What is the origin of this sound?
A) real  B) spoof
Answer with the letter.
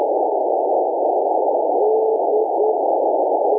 A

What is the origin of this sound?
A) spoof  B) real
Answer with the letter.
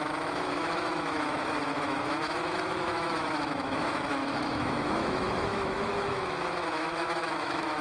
A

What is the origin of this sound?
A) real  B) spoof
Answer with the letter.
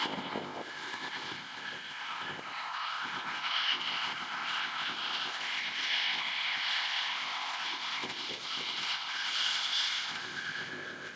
B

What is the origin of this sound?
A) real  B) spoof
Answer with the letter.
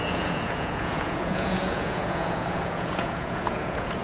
B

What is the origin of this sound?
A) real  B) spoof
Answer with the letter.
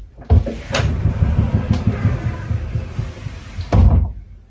A